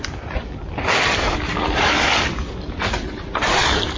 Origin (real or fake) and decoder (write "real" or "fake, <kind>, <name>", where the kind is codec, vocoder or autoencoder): real